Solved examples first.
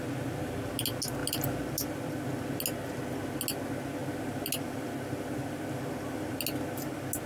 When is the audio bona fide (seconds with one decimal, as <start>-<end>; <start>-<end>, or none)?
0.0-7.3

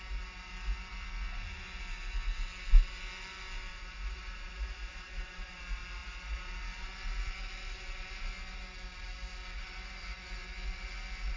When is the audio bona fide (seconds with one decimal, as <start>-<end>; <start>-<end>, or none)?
0.0-3.7; 5.6-6.0; 6.5-11.4

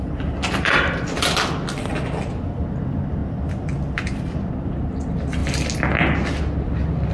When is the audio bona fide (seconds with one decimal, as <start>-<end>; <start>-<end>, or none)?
0.0-7.1

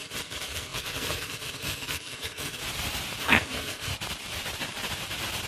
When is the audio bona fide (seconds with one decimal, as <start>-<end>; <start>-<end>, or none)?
2.6-3.2; 3.9-5.5

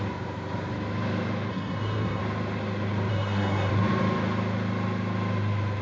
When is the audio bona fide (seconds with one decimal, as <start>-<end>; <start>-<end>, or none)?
0.0-1.5; 2.2-3.1; 3.7-5.8

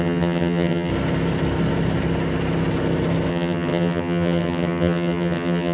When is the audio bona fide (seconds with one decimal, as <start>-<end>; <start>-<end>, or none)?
0.9-3.3